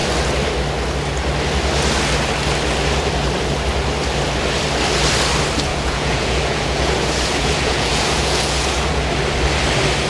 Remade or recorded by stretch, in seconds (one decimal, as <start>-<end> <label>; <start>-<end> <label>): 0.0-5.7 recorded; 5.7-9.1 remade; 9.1-10.1 recorded